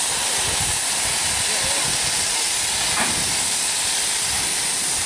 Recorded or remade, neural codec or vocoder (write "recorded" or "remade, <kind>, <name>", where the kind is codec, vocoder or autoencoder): recorded